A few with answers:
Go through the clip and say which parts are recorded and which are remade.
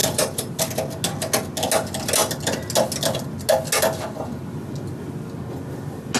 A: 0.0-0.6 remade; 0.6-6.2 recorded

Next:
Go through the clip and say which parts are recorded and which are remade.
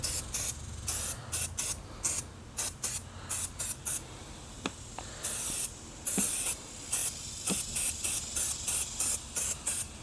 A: 0.0-10.0 recorded